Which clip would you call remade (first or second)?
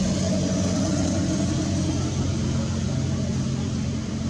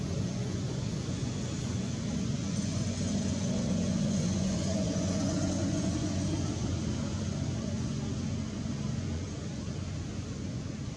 second